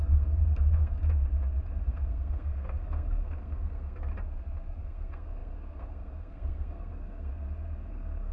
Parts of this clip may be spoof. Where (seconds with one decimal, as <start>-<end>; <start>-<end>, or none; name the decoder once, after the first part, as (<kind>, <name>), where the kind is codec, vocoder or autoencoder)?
0.0-1.0 (codec, SNAC); 1.8-4.1; 4.7-7.3; 7.9-8.3